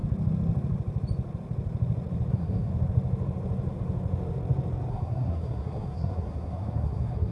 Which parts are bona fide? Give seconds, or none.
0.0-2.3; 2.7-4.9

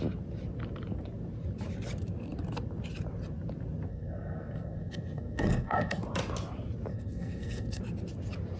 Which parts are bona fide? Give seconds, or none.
0.0-3.9; 6.0-6.9; 7.8-8.6

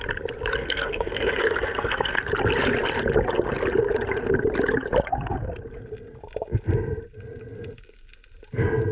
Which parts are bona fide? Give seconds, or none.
0.0-0.6; 2.2-8.9

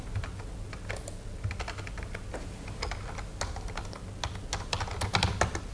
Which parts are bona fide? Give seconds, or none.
0.0-5.7

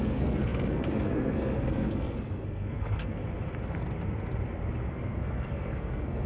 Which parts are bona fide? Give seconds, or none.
3.2-4.9